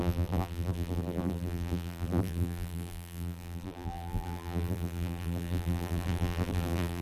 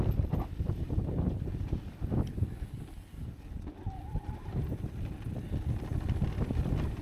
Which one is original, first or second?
second